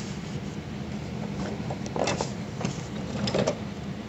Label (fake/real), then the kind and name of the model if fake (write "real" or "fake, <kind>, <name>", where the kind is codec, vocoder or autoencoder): real